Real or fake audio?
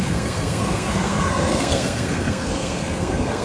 fake